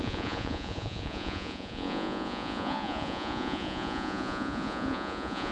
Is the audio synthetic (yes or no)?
yes